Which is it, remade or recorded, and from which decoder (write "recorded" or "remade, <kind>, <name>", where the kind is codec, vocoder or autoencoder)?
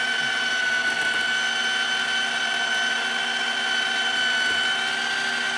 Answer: recorded